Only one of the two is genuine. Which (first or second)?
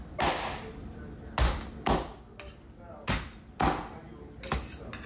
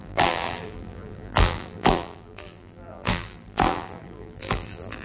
first